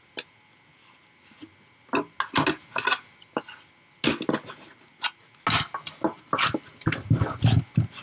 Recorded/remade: recorded